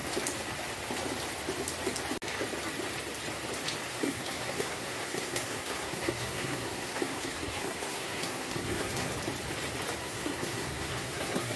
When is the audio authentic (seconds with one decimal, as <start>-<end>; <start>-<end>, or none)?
0.0-3.9; 9.1-10.0